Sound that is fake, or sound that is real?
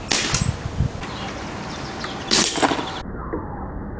real